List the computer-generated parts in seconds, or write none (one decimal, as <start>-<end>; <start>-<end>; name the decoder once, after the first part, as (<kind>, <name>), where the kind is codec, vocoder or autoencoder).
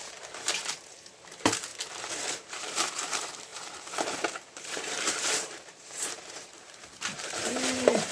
0.0-1.7 (vocoder, BigVGAN v2); 2.3-8.1